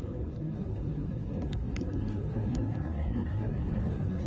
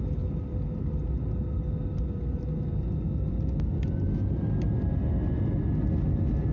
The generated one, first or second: first